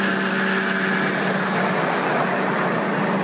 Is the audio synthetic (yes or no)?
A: no